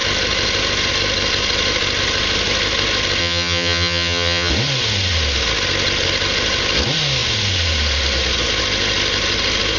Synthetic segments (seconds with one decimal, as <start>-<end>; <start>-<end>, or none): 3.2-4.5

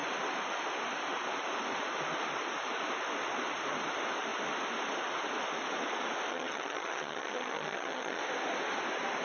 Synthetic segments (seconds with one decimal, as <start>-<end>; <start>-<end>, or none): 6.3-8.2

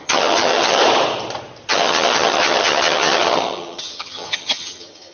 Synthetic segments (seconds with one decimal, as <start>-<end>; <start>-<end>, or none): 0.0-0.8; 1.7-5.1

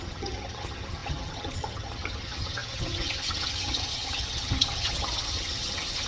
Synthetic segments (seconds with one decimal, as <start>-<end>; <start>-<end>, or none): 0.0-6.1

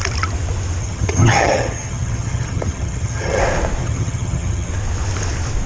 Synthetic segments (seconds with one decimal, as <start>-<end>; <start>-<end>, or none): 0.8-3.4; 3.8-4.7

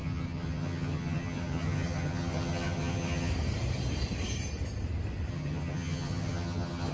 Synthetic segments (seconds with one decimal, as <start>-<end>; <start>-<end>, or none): 0.0-3.3; 5.3-6.9